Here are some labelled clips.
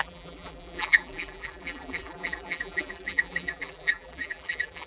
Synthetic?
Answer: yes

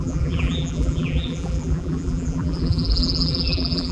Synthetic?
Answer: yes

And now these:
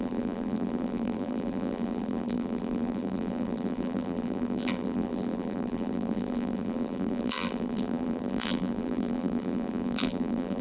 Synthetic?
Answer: yes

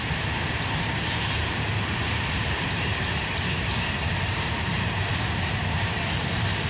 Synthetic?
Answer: yes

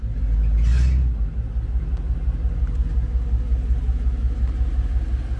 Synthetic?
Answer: no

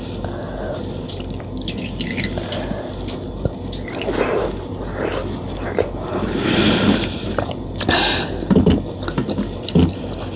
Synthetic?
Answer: yes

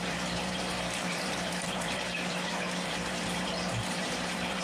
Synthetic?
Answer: yes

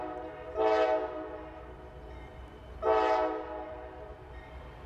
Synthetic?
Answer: no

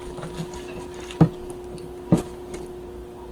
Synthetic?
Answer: no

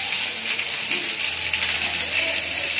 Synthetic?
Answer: yes